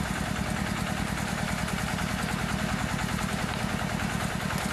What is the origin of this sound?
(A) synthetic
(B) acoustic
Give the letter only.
A